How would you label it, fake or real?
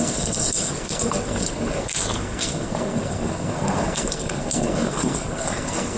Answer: fake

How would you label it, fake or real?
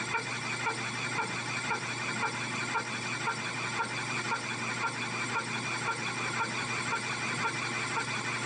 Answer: real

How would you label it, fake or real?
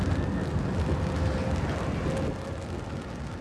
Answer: real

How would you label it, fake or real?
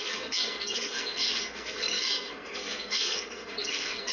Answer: fake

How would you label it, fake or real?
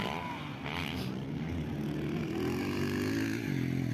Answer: real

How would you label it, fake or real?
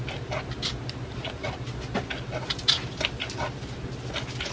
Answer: real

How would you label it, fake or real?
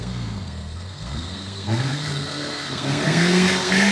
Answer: fake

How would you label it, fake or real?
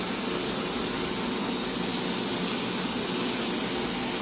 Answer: real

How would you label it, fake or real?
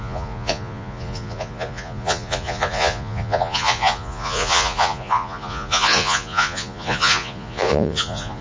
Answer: fake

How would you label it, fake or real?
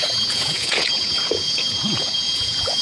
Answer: fake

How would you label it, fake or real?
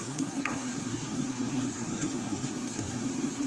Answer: fake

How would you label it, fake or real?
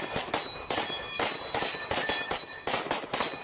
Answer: real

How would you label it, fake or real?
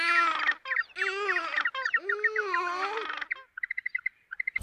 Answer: real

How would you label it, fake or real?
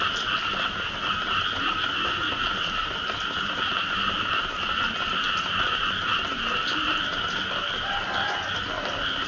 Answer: real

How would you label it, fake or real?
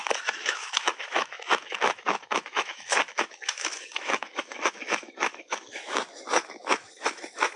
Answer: fake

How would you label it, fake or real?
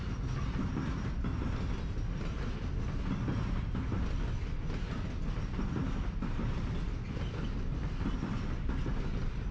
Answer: real